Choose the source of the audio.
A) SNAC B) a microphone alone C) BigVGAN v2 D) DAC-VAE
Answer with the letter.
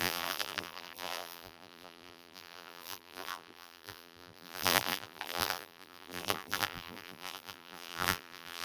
C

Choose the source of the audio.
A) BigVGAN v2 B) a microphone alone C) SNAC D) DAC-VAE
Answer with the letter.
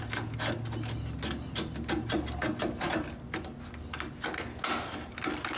B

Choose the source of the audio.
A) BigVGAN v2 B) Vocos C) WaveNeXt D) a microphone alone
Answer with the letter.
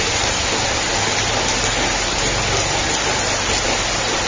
D